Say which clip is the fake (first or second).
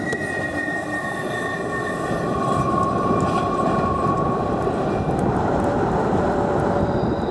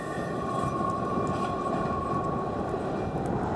first